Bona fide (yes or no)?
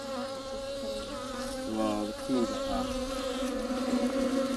yes